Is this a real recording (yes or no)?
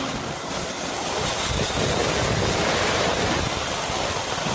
yes